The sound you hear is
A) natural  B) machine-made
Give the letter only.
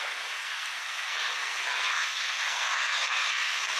B